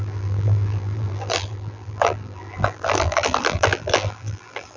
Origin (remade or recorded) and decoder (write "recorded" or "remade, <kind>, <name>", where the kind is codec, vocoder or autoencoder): remade, vocoder, BigVGAN v2